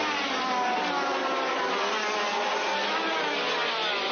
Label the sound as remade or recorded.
recorded